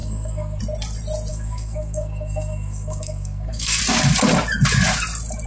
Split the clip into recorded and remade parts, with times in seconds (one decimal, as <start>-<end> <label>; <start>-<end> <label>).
0.0-0.6 remade; 0.6-1.3 recorded; 1.3-3.8 remade; 3.8-5.5 recorded